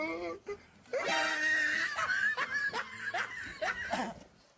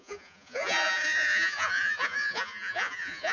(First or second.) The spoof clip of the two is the second